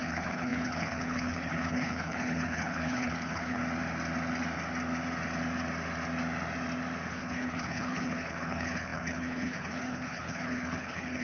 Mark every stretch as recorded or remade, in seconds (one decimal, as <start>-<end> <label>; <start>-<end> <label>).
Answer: 0.0-3.6 remade; 3.6-7.1 recorded; 7.1-11.2 remade